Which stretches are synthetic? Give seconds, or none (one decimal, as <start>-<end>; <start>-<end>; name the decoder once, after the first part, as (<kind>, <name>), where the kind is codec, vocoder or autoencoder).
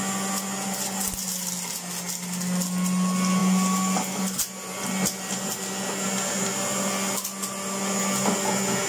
none